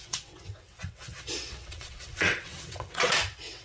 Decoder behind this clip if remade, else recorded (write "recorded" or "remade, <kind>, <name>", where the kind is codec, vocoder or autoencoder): remade, vocoder, WaveNeXt